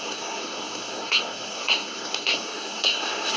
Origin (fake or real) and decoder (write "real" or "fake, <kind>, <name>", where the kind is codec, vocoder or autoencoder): fake, codec, SNAC